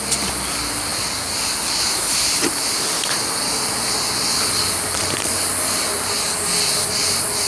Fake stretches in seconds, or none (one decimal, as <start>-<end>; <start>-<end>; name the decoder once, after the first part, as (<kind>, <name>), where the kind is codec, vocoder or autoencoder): 0.0-0.9 (vocoder, BigVGAN v2); 1.9-7.5